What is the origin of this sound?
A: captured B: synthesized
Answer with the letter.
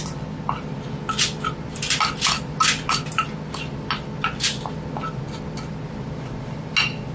A